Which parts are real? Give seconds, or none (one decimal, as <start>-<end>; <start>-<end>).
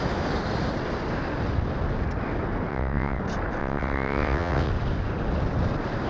0.0-2.7; 3.2-3.6; 4.7-6.1